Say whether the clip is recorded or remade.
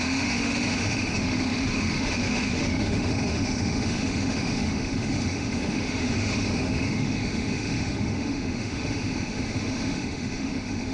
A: remade